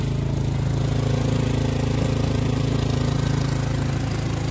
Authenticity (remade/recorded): recorded